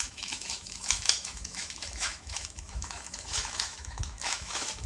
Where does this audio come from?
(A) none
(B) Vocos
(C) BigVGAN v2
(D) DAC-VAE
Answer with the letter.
D